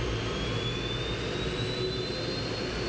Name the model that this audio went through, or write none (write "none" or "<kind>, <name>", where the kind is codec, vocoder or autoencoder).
none